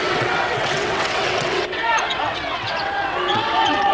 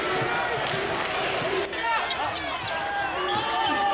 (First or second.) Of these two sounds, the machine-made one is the first